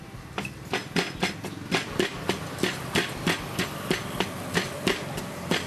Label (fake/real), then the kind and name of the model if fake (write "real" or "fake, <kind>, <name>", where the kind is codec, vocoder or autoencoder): real